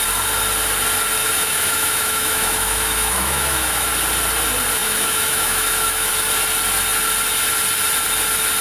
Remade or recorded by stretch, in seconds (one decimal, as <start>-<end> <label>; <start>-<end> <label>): 0.0-1.2 recorded; 1.2-3.9 remade; 3.9-4.8 recorded; 4.8-6.1 remade; 6.1-8.6 recorded